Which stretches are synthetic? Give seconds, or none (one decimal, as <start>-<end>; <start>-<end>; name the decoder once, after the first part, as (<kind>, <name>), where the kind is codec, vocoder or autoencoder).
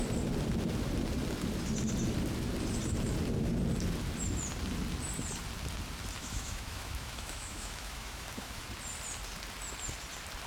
6.2-8.6 (autoencoder, DAC-VAE)